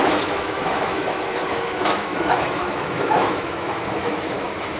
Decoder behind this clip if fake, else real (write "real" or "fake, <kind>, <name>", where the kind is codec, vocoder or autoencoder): fake, autoencoder, DAC-VAE